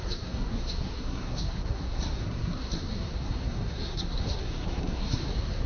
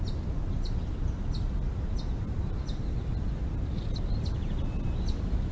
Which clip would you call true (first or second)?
second